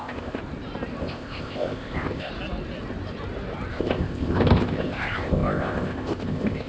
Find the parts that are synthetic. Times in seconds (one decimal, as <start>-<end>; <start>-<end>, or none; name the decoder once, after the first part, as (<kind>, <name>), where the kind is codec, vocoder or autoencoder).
0.0-0.4 (codec, ZipCodec); 1.0-2.3; 3.7-6.7